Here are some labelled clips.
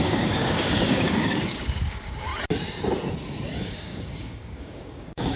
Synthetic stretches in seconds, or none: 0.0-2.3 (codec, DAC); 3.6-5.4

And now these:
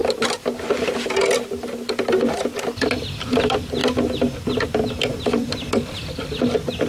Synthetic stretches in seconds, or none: 3.8-4.9 (vocoder, BigVGAN v2); 5.4-6.2

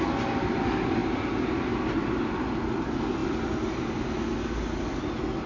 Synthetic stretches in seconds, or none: none

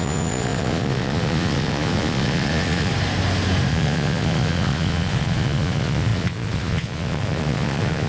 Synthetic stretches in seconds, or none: 0.0-2.9 (vocoder, Vocos); 3.7-8.1

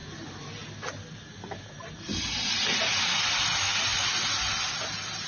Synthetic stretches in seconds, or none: none

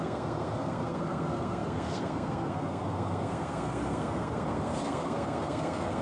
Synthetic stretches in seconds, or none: 0.0-6.0 (codec, SNAC)